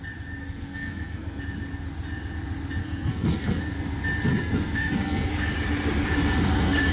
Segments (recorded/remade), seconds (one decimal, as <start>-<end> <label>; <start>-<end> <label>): 0.0-0.4 recorded; 0.4-1.4 remade; 1.4-2.8 recorded; 2.8-3.6 remade; 3.6-4.3 recorded; 4.3-5.3 remade; 5.3-6.9 recorded